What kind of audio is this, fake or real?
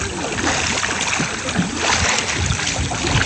real